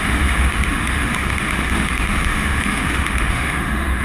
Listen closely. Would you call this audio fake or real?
fake